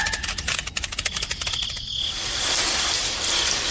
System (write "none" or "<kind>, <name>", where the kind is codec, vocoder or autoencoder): none